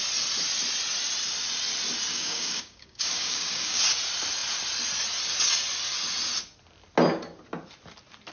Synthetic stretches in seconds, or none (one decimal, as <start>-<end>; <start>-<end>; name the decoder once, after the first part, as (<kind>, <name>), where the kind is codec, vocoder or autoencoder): 2.1-3.8 (codec, DAC)

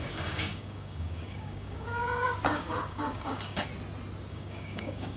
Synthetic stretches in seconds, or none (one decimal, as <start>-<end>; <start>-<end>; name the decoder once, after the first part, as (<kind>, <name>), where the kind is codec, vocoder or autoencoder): 0.0-3.7 (codec, DAC); 4.3-5.2